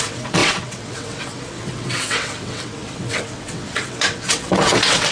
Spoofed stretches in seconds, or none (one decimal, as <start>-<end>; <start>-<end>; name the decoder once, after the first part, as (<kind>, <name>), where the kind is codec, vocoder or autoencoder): 0.0-5.1 (vocoder, WaveNeXt)